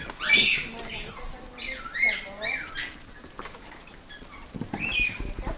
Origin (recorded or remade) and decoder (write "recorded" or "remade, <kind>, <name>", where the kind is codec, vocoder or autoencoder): recorded